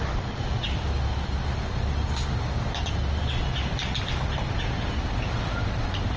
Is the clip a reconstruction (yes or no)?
no